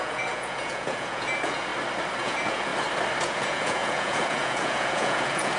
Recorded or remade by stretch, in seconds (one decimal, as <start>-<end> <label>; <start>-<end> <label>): 0.0-1.7 remade; 1.7-2.2 recorded; 2.2-2.7 remade; 2.7-3.2 recorded; 3.2-5.6 remade